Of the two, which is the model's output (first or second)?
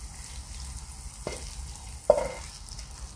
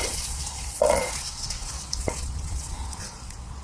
second